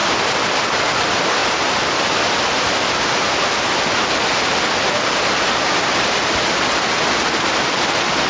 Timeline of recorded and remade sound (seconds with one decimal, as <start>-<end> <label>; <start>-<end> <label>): 0.0-0.8 remade; 0.8-8.3 recorded